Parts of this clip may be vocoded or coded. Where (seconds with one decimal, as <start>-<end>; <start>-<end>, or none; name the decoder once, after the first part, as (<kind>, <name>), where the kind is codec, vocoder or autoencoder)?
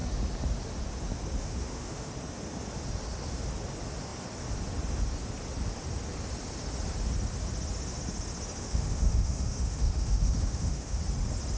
1.4-2.1 (autoencoder, DAC-VAE); 8.6-11.0